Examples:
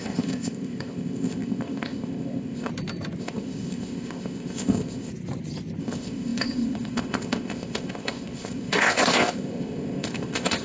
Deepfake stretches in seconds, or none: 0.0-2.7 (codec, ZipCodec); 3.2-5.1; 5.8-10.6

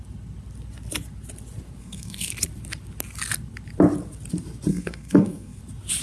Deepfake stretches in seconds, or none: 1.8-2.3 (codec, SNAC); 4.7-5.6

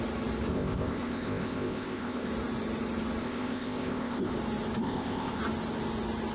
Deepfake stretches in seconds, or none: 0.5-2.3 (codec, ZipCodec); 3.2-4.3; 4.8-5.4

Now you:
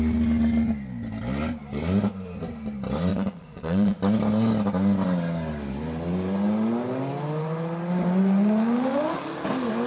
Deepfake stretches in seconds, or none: 3.1-4.0 (vocoder, Vocos)

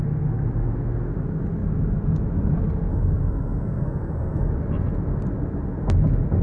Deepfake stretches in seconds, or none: 2.9-4.5 (codec, SNAC)